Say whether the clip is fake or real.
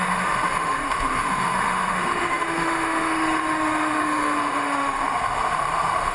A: fake